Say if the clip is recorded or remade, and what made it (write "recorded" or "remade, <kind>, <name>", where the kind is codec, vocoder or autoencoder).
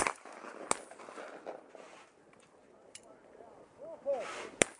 recorded